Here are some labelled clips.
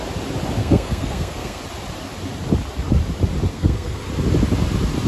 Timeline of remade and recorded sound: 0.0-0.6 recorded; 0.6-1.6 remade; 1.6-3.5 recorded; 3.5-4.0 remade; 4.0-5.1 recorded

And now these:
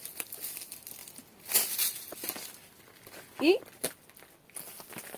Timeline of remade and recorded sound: 0.0-5.2 recorded

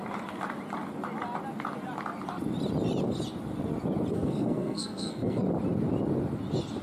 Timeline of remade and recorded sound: 0.0-4.1 recorded; 4.1-5.4 remade; 5.4-6.8 recorded

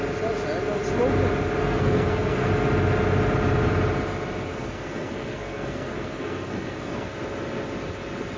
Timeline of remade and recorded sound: 0.0-1.6 recorded; 1.6-2.5 remade; 2.5-4.5 recorded; 4.5-7.1 remade; 7.1-8.4 recorded

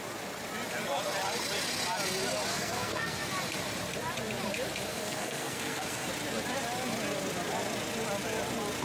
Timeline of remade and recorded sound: 0.0-2.5 recorded; 2.5-3.3 remade; 3.3-4.9 recorded; 4.9-6.1 remade; 6.1-8.8 recorded